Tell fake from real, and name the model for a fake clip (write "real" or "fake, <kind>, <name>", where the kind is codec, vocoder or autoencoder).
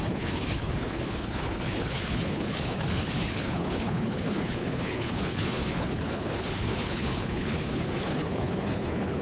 fake, codec, HILCodec